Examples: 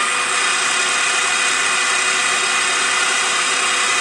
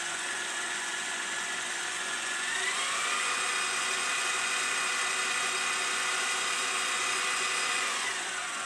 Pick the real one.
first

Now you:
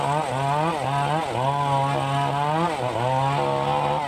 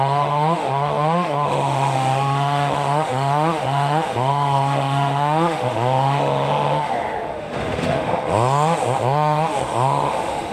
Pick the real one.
first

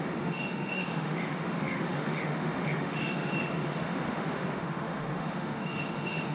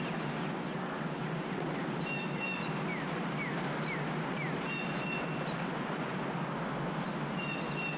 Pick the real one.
second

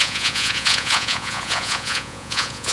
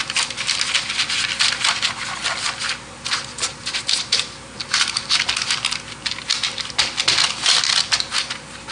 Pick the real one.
second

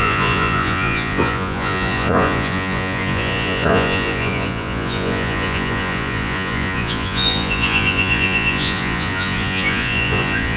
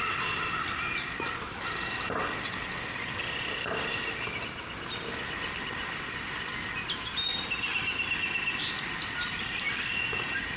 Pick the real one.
second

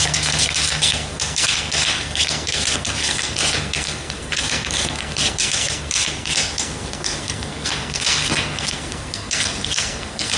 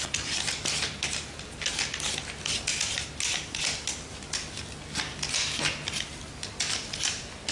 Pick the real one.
second